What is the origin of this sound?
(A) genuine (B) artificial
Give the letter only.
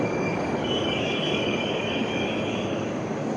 B